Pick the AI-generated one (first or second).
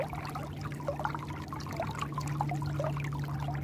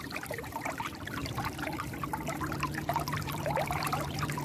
second